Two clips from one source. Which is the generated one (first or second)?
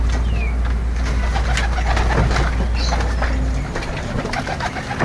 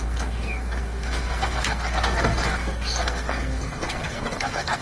second